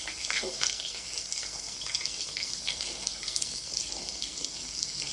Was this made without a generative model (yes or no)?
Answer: no